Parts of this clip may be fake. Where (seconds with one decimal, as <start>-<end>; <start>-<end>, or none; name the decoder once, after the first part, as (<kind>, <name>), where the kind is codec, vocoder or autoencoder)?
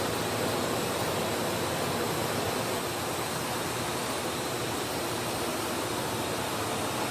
none